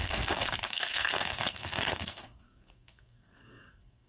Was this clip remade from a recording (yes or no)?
yes